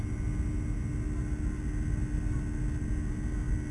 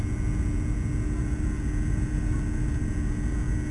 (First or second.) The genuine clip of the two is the first